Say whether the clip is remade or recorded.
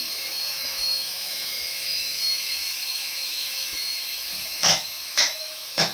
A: remade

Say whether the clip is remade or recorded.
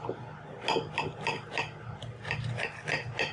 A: recorded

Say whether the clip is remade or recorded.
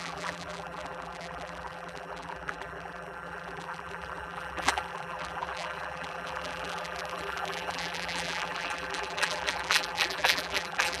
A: remade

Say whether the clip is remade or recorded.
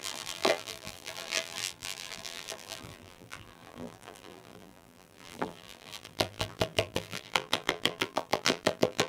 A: remade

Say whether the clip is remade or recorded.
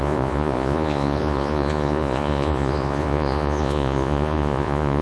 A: remade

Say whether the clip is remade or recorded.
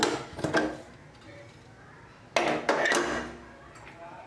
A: recorded